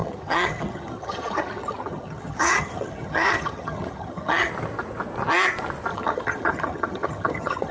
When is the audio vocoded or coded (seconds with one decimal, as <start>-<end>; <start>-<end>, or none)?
0.0-4.5; 5.9-7.7